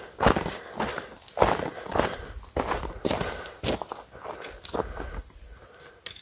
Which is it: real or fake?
real